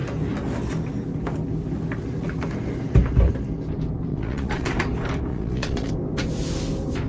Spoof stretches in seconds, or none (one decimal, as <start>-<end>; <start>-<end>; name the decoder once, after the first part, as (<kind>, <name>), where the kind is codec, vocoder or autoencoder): 4.1-4.7 (vocoder, Vocos); 5.3-5.9